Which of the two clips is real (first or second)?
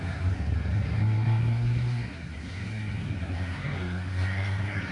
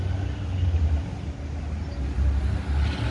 second